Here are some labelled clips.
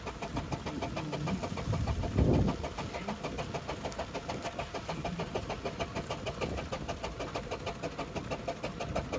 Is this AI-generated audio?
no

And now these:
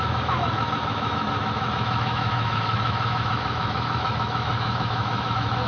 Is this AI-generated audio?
yes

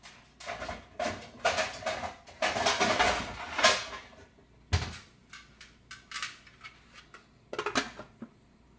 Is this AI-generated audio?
no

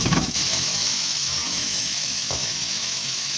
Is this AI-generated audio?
yes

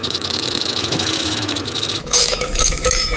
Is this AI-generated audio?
yes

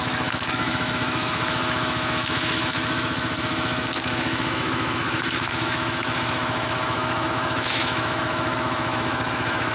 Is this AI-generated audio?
yes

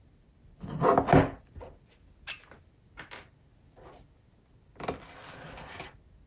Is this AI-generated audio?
no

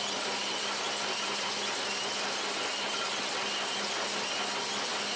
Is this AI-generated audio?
no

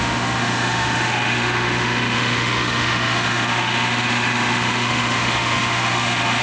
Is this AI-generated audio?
yes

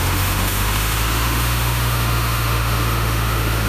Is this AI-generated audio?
yes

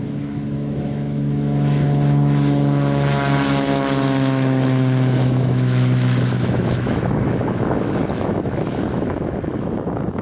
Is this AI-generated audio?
yes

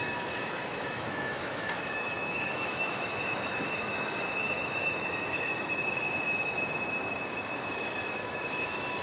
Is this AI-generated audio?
yes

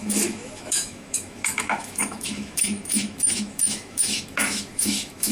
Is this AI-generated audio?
yes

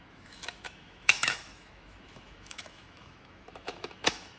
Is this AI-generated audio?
yes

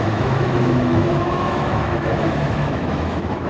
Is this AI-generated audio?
yes